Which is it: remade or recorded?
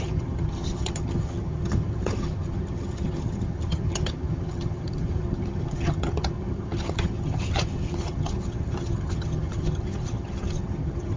remade